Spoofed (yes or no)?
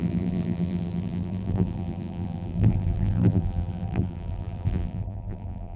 yes